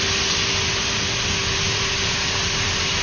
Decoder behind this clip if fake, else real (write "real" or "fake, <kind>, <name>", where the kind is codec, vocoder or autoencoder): real